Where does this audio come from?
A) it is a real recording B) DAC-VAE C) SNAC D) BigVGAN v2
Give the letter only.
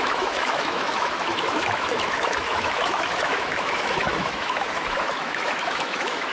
B